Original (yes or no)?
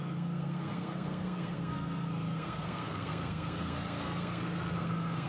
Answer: no